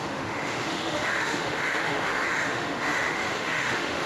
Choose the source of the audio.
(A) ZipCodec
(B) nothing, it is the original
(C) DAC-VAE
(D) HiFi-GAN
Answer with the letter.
C